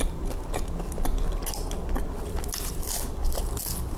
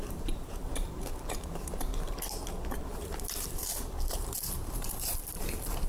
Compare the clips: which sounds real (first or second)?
first